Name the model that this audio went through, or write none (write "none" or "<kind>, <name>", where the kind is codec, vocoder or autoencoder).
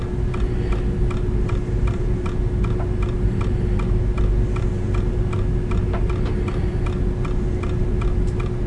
none